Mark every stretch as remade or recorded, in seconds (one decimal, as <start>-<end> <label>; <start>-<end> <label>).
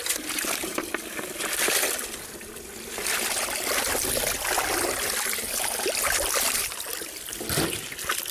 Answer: 0.0-8.3 recorded